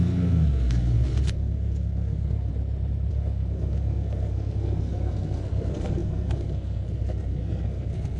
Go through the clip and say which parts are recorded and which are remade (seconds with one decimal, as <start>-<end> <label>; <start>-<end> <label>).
0.0-2.5 remade; 2.5-3.1 recorded; 3.1-8.2 remade